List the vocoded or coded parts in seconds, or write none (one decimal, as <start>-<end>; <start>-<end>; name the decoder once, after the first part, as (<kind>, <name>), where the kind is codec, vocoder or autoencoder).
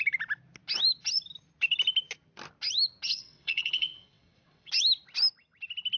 3.1-4.7 (vocoder, WaveNeXt)